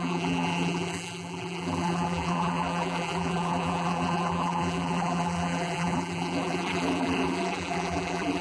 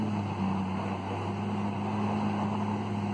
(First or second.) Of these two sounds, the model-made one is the first